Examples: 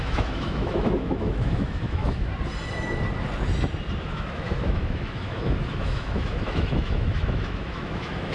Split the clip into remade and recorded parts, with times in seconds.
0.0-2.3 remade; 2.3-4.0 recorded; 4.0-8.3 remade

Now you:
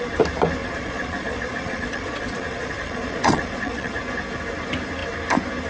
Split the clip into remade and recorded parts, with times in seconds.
0.0-0.6 recorded; 0.6-4.0 remade; 4.0-5.7 recorded